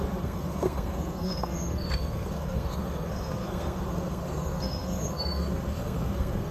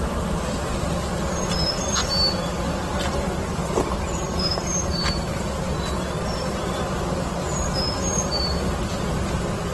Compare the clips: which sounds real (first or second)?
second